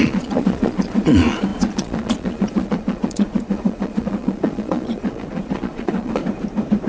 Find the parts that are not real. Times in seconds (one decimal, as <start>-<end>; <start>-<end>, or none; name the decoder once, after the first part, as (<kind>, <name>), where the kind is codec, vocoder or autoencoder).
0.0-6.2 (vocoder, Vocos)